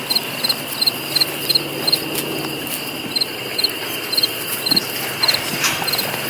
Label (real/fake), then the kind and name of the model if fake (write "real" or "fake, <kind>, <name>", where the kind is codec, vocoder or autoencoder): real